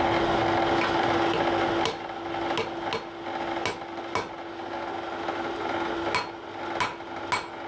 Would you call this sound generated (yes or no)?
no